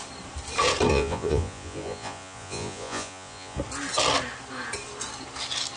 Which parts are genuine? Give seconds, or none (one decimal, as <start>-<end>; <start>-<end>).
0.0-0.9; 3.6-5.8